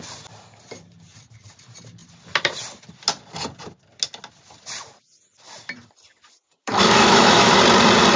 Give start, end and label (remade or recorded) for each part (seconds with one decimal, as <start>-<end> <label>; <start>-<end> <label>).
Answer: 0.0-6.6 recorded; 6.6-7.5 remade; 7.5-8.2 recorded